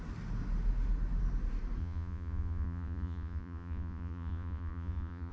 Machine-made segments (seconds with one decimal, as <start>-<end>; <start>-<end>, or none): 1.8-5.3